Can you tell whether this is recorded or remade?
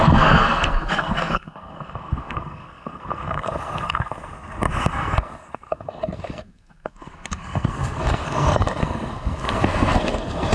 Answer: remade